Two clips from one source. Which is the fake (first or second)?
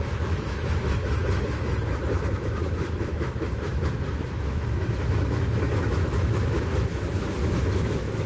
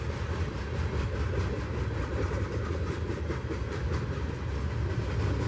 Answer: first